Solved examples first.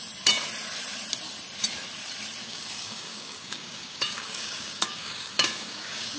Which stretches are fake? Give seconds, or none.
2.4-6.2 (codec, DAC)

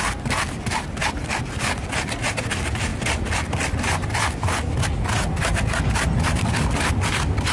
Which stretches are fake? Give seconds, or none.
none